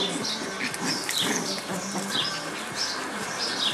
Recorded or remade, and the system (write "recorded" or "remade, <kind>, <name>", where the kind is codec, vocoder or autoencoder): recorded